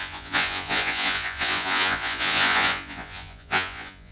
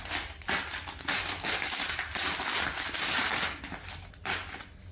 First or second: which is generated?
first